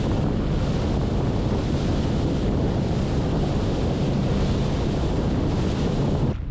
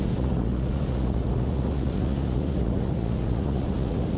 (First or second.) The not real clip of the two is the second